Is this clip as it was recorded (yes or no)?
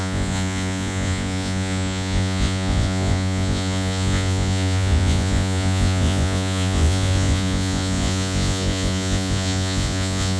no